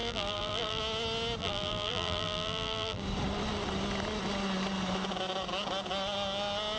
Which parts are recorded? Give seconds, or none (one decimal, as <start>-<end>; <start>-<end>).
0.8-1.4; 3.0-6.8

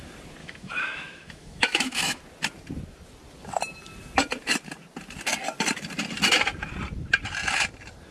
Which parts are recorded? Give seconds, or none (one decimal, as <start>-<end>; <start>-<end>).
0.0-0.4; 2.2-8.1

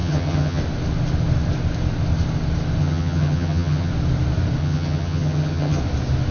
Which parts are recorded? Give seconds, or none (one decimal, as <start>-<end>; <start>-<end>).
0.6-2.8; 3.9-4.6; 5.8-6.3

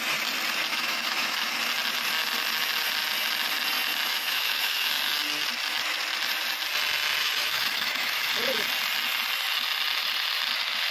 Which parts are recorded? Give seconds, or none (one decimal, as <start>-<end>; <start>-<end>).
0.0-0.7; 1.6-4.1; 4.9-7.2; 8.3-10.9

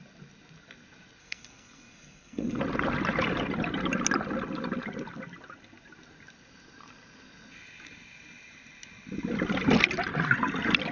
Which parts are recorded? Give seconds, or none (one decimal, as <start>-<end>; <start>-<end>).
0.0-1.2; 2.6-10.9

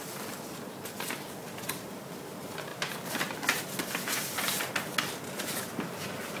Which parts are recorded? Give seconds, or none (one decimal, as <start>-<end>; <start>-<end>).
0.0-6.4

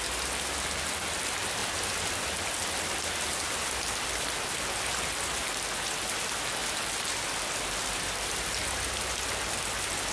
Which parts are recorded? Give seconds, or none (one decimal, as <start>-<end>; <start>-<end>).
0.0-10.1

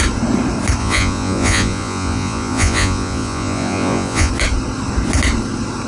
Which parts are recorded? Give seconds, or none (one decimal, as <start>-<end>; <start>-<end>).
0.0-0.8; 4.3-5.9